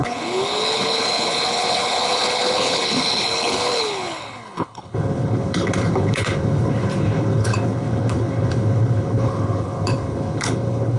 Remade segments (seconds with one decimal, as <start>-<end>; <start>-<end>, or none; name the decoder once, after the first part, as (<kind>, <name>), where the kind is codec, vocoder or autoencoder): 0.0-11.0 (codec, HILCodec)